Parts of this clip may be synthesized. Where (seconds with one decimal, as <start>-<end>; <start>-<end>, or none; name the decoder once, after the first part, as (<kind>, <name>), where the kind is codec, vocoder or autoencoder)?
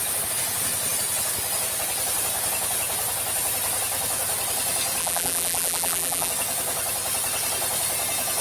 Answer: 5.0-6.3 (vocoder, BigVGAN v2)